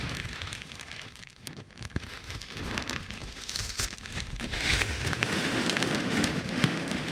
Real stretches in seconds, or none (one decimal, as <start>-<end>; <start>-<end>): none